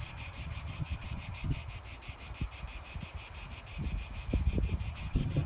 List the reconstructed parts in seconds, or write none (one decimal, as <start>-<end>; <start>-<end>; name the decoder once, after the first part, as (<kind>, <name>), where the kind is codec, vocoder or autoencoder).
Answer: 0.0-1.6 (vocoder, HiFi-GAN); 4.9-5.5